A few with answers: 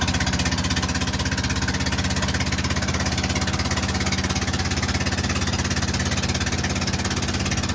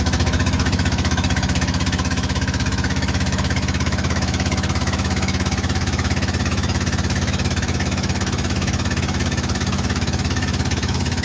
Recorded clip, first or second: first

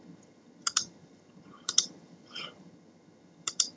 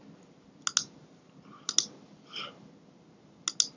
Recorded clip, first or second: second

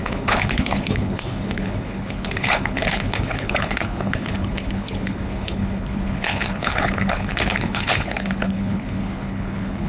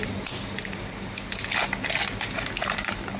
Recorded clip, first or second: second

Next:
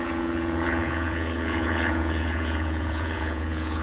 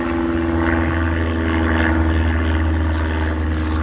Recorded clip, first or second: second